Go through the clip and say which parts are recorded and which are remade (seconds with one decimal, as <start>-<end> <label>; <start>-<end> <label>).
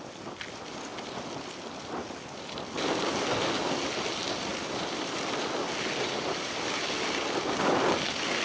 0.0-0.9 recorded; 0.9-2.4 remade; 2.4-4.5 recorded; 4.5-7.5 remade; 7.5-8.4 recorded